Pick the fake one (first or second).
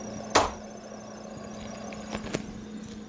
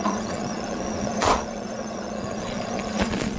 second